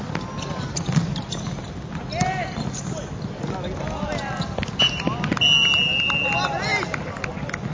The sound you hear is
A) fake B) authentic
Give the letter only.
B